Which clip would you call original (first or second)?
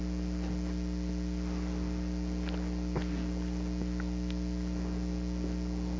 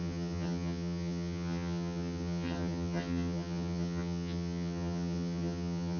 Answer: first